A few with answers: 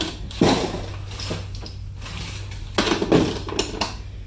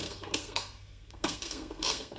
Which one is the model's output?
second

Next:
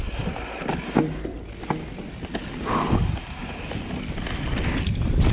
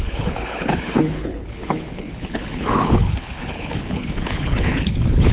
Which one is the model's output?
second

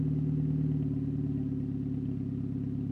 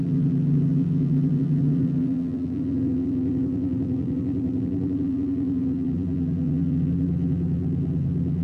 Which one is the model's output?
second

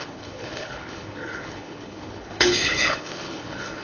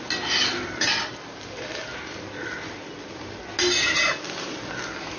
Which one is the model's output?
first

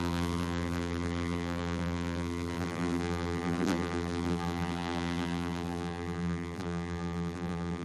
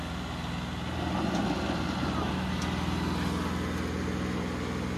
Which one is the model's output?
first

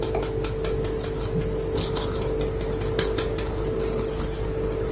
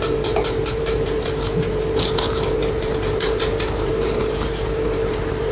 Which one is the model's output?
second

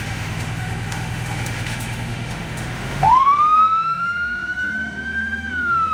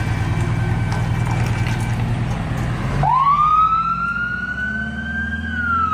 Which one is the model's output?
first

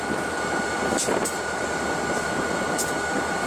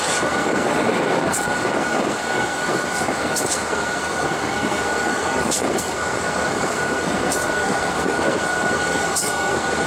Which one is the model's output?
second